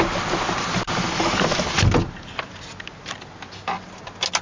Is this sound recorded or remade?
recorded